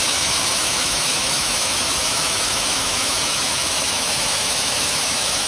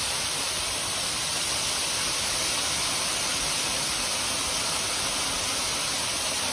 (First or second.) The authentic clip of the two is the second